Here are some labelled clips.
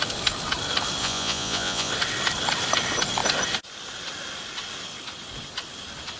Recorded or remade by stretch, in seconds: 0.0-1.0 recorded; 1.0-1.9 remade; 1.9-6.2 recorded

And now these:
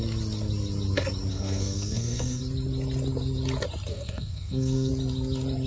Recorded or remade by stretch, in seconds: 0.0-1.3 recorded; 1.3-2.4 remade; 2.4-3.9 recorded; 3.9-4.9 remade; 4.9-5.7 recorded

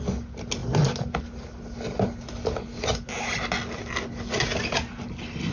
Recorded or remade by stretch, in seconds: 0.0-5.5 recorded

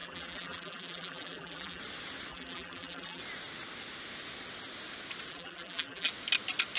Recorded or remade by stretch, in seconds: 0.0-1.8 remade; 1.8-2.3 recorded; 2.3-3.2 remade; 3.2-5.3 recorded; 5.3-6.1 remade; 6.1-6.8 recorded

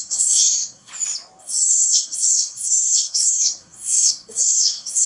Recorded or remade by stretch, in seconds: 0.0-0.9 remade; 0.9-1.4 recorded; 1.4-5.1 remade

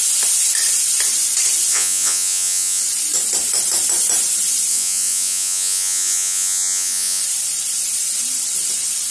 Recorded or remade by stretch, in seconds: 0.0-1.7 recorded; 1.7-2.8 remade; 2.8-4.7 recorded; 4.7-7.2 remade; 7.2-9.1 recorded

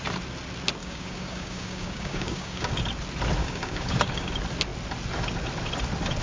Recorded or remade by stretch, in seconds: 0.0-0.8 recorded; 0.8-2.7 remade; 2.7-3.4 recorded; 3.4-4.3 remade; 4.3-6.2 recorded